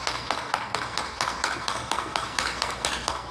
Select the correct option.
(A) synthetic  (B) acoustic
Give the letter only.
A